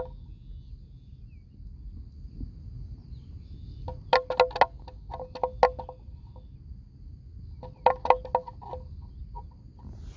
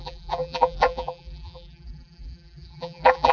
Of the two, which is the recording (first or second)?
first